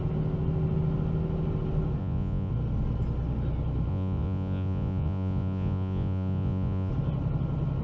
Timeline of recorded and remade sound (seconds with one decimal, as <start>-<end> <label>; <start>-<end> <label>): 0.0-2.0 recorded; 2.0-2.5 remade; 2.5-3.9 recorded; 3.9-6.9 remade; 6.9-7.8 recorded